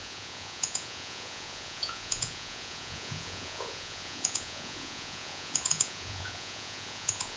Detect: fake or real fake